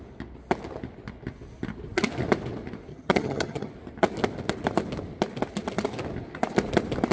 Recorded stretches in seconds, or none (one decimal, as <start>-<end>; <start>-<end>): 0.0-2.9; 3.7-7.1